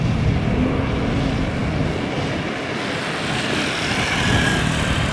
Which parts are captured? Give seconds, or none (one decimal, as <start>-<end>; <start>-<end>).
0.0-5.1